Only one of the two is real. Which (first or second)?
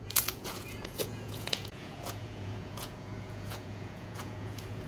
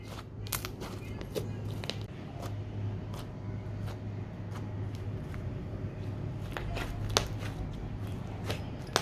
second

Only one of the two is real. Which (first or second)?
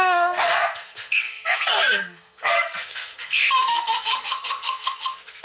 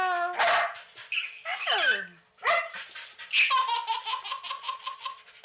second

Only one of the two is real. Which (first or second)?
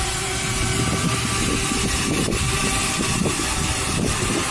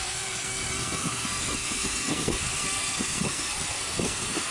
first